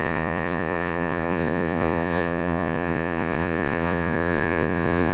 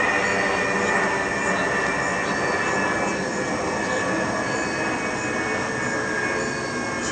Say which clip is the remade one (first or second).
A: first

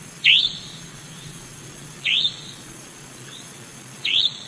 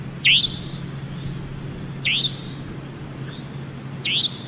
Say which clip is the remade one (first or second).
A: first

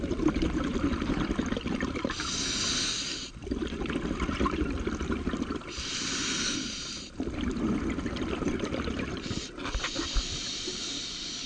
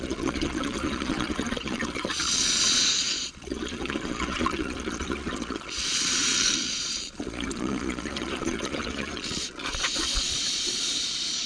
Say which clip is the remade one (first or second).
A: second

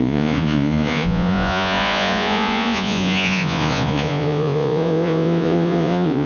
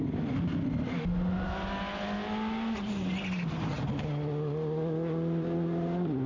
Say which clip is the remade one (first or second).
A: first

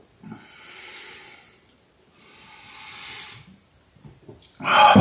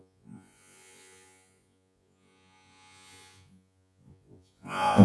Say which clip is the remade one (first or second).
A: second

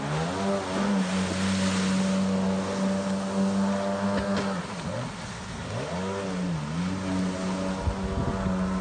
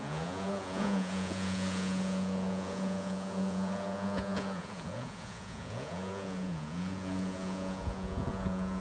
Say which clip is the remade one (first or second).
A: second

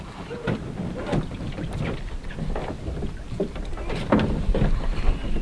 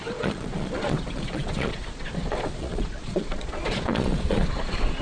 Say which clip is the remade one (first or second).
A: second